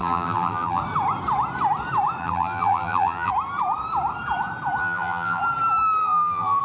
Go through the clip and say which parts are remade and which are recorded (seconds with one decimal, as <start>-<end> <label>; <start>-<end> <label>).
0.0-0.8 remade; 0.8-2.2 recorded; 2.2-3.3 remade; 3.3-4.8 recorded; 4.8-5.4 remade; 5.4-6.0 recorded; 6.0-6.6 remade